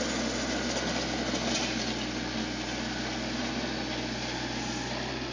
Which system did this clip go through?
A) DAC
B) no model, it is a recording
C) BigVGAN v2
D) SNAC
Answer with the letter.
B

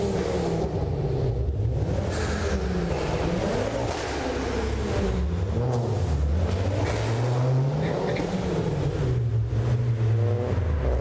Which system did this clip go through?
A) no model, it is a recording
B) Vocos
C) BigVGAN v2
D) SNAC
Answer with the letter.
A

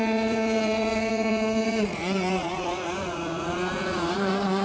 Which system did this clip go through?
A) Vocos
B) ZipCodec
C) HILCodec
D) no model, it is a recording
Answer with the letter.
A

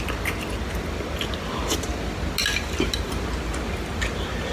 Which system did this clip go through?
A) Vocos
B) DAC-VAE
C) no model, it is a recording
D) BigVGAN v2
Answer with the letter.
C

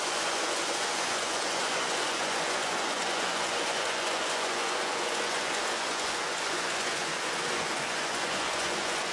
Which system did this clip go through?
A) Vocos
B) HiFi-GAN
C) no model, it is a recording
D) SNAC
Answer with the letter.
A